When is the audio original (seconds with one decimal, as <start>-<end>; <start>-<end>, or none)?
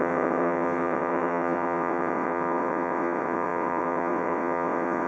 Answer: none